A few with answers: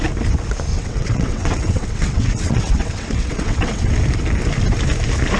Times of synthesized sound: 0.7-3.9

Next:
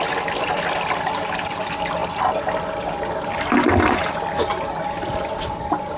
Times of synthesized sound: none

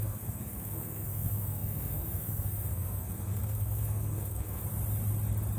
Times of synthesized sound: 0.0-4.6

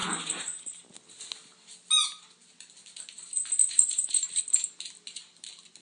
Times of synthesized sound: 0.0-0.6; 3.6-4.4

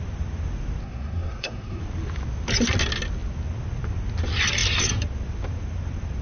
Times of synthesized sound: 0.8-1.8

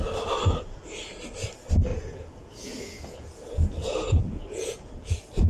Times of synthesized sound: 1.9-5.1